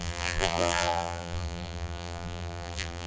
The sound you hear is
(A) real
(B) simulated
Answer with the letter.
B